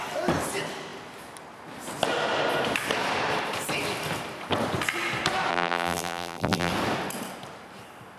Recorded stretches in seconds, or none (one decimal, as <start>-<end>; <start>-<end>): 0.0-5.5; 6.7-8.2